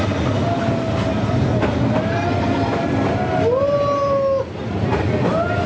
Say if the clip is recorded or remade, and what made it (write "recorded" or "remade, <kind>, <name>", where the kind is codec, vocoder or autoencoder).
recorded